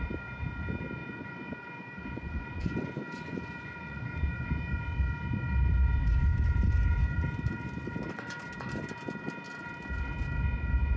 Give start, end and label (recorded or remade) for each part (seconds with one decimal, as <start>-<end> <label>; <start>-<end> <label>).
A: 0.0-1.0 recorded; 1.0-4.7 remade; 4.7-11.0 recorded